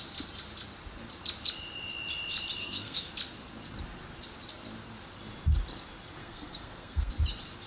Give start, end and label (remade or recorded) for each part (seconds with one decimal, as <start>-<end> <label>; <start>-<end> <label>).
0.0-2.6 recorded; 2.6-3.1 remade; 3.1-6.2 recorded; 6.2-7.1 remade; 7.1-7.7 recorded